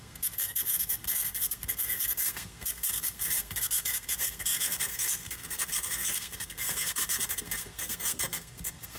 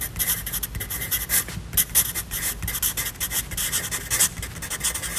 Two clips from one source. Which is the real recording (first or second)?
second